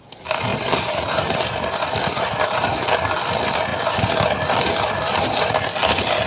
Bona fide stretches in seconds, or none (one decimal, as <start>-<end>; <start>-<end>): 0.0-0.5; 1.4-6.3

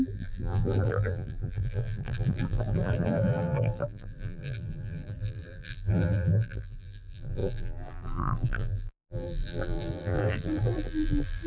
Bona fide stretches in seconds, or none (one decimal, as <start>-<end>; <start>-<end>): none

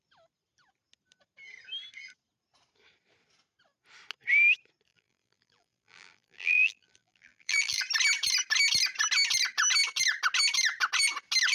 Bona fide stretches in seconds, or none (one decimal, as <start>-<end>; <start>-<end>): 0.0-4.9; 7.8-11.5